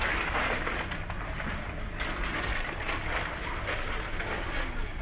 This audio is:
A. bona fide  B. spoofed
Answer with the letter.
A